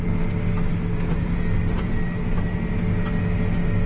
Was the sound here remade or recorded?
recorded